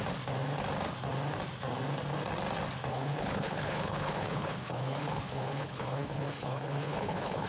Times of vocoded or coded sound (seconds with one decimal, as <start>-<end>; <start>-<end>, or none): 2.9-7.5